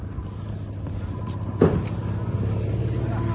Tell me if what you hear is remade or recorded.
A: recorded